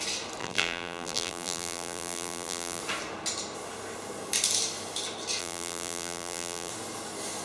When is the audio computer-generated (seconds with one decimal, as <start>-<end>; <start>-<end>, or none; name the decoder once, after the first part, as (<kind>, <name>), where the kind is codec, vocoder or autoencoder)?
0.4-2.8 (vocoder, BigVGAN v2); 5.4-6.7